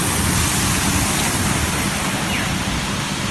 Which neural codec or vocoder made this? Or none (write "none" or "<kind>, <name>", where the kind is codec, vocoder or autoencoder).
none